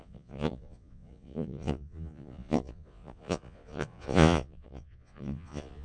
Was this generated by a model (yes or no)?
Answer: yes